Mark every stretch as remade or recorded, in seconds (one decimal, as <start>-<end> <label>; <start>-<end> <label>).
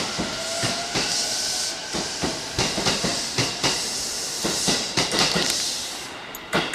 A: 0.0-1.8 recorded; 1.8-2.3 remade; 2.3-3.1 recorded; 3.1-6.3 remade; 6.3-6.7 recorded